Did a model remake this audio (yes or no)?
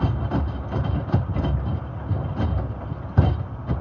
yes